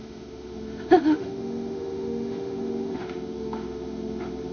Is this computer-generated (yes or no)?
yes